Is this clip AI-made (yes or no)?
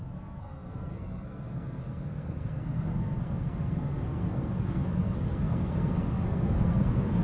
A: yes